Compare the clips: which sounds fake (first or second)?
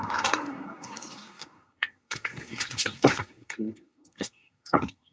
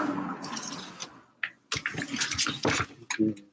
first